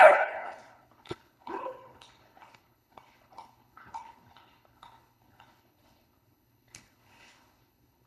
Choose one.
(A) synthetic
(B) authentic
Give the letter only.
A